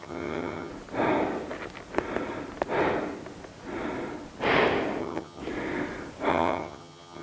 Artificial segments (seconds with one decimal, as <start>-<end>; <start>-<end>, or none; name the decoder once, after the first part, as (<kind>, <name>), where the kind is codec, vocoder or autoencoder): 0.0-0.7 (vocoder, HiFi-GAN); 5.0-5.4; 6.3-7.2